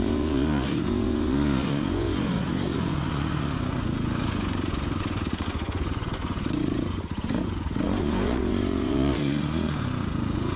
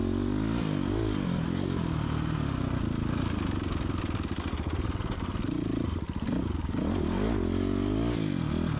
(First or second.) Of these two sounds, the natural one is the second